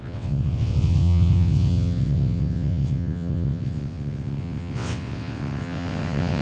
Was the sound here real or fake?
fake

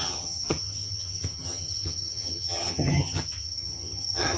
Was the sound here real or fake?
fake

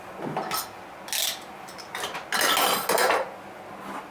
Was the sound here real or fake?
real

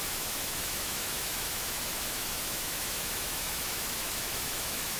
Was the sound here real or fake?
fake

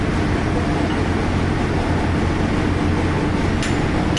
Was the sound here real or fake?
real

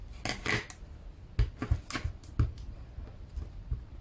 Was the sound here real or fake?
real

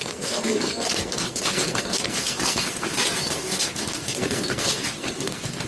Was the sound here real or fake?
fake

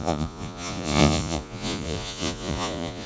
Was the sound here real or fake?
fake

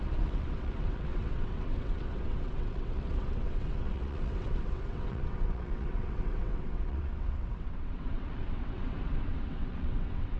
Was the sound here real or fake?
fake